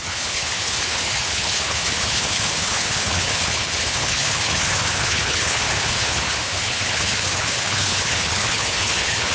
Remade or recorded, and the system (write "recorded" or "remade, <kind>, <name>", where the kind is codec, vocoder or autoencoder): remade, codec, HILCodec